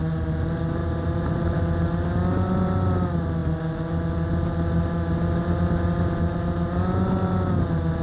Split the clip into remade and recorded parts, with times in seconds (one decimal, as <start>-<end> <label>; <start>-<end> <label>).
0.0-0.8 recorded; 0.8-1.6 remade; 1.6-8.0 recorded